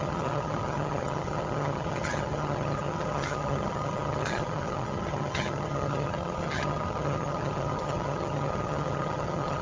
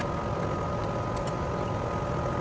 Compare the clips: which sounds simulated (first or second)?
first